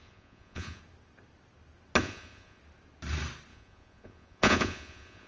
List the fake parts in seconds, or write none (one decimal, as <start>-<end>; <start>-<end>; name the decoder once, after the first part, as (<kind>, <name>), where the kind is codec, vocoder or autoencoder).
0.0-0.8 (vocoder, Vocos); 2.0-2.6; 3.5-5.3